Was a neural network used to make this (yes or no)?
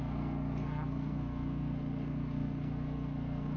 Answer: yes